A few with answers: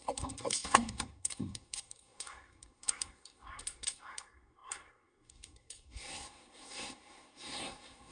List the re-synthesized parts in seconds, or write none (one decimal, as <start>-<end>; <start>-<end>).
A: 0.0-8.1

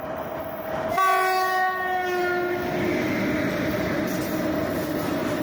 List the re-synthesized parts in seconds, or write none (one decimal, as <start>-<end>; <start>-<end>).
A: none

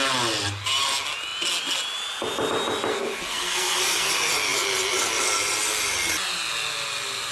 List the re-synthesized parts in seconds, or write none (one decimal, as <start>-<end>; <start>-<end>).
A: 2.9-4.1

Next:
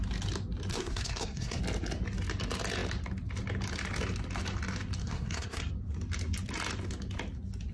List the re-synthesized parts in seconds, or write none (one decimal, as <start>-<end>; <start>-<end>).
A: 0.7-1.6; 5.0-5.7